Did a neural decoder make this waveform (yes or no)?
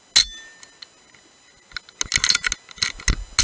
no